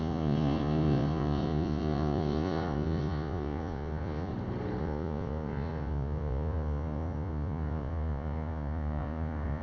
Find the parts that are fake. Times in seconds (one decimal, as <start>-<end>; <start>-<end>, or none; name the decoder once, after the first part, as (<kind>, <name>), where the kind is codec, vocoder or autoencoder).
0.0-4.3 (vocoder, Vocos); 4.8-9.6